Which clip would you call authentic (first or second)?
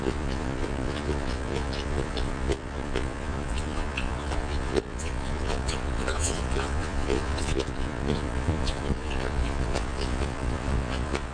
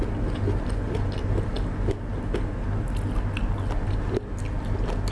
second